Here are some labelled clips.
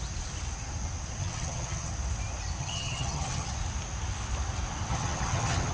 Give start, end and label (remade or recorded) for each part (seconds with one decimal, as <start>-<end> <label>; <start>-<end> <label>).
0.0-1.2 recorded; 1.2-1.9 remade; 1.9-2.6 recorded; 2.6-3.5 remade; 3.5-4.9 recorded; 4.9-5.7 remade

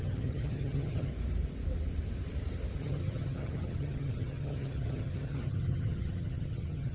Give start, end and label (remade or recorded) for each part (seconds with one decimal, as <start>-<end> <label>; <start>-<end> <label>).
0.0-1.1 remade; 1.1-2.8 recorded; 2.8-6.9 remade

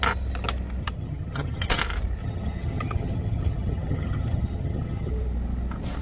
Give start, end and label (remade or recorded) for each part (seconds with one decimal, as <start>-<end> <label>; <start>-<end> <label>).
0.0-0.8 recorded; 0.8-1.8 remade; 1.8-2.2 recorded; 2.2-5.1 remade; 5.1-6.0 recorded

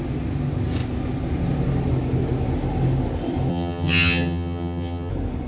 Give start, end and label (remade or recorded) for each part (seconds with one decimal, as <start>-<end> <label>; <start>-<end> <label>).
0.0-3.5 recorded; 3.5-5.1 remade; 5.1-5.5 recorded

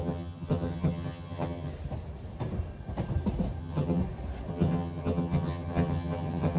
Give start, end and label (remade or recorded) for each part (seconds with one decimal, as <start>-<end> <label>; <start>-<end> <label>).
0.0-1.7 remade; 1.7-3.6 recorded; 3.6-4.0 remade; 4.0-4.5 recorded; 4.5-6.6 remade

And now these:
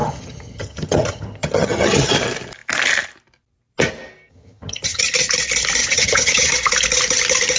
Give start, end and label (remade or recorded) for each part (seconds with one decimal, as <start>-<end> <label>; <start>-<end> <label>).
0.0-2.1 remade; 2.1-4.3 recorded; 4.3-5.0 remade; 5.0-5.8 recorded; 5.8-6.5 remade; 6.5-7.6 recorded

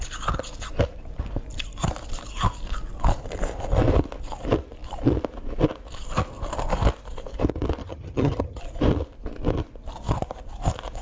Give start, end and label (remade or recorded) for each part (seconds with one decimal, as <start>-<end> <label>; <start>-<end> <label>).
0.0-7.8 recorded; 7.8-8.6 remade; 8.6-11.0 recorded